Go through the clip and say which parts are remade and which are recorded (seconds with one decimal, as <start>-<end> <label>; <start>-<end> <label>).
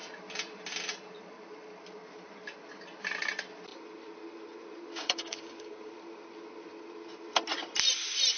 0.0-4.9 recorded; 4.9-5.9 remade; 5.9-8.4 recorded